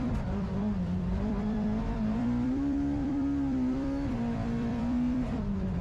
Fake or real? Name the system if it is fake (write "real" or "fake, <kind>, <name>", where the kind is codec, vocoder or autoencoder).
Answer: fake, vocoder, BigVGAN v2